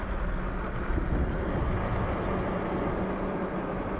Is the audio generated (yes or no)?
no